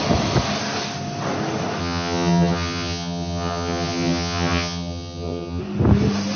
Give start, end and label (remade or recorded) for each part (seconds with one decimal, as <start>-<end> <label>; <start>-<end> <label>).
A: 0.0-1.8 recorded; 1.8-5.6 remade; 5.6-6.4 recorded

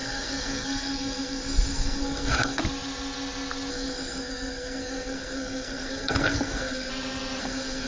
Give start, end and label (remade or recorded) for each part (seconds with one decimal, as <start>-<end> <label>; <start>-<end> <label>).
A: 0.0-2.6 remade; 2.6-3.7 recorded; 3.7-6.9 remade; 6.9-7.4 recorded; 7.4-7.9 remade

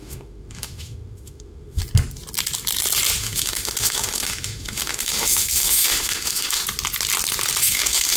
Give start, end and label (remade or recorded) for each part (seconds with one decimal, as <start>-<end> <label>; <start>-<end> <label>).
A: 0.0-1.8 remade; 1.8-3.2 recorded; 3.2-6.6 remade; 6.6-7.6 recorded; 7.6-8.2 remade

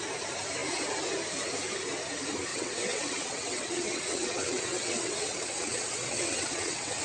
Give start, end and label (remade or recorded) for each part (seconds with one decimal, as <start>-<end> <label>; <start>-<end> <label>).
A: 0.0-2.5 recorded; 2.5-7.0 remade

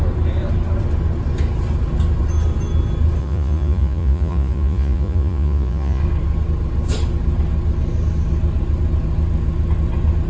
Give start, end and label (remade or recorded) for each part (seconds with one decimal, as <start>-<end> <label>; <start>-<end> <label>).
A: 0.0-3.2 recorded; 3.2-6.0 remade; 6.0-10.3 recorded

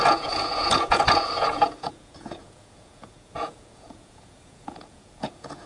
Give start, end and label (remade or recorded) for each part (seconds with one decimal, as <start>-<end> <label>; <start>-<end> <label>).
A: 0.0-5.7 remade

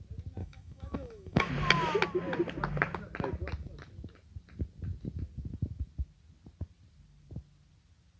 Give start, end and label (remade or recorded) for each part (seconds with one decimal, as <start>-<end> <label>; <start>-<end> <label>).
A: 0.0-0.4 recorded; 0.4-1.5 remade; 1.5-8.2 recorded